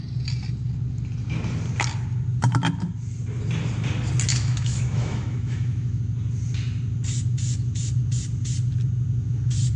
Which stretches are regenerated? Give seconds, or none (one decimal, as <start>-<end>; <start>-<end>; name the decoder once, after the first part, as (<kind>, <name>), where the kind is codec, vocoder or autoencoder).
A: 4.3-6.0 (autoencoder, DAC-VAE)